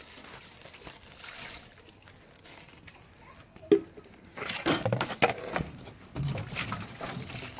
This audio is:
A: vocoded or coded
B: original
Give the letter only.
B